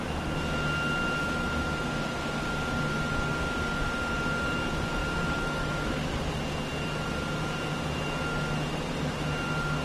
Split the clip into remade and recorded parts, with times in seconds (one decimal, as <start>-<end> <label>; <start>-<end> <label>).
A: 0.0-1.2 recorded; 1.2-2.5 remade; 2.5-5.0 recorded; 5.0-6.2 remade; 6.2-9.8 recorded